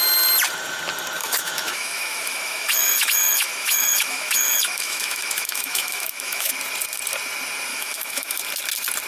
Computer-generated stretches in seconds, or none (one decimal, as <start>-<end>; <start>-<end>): 1.2-6.5; 7.7-8.4